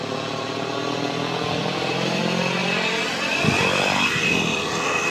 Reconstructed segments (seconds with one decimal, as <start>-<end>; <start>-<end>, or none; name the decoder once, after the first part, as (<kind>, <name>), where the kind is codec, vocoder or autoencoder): 1.6-2.2 (vocoder, BigVGAN v2)